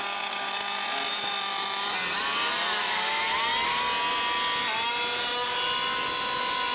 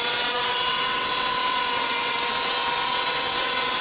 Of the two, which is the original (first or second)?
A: first